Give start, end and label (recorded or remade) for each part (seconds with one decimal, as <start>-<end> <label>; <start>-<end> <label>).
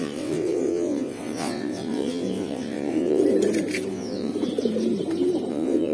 0.0-3.2 remade; 3.2-3.9 recorded; 3.9-4.3 remade; 4.3-5.5 recorded; 5.5-5.9 remade